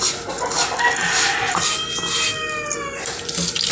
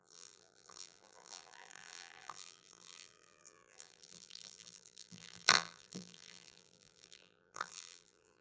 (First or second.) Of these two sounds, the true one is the first